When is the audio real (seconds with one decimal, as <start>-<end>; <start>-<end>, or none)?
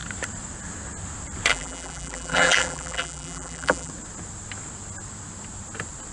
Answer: 0.0-1.5; 3.9-6.1